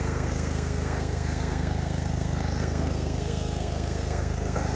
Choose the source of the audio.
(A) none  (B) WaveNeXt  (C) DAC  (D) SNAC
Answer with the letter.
D